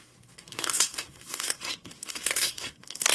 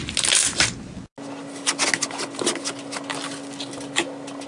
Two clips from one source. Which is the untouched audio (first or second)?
second